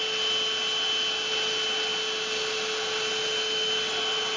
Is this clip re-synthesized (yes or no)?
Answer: no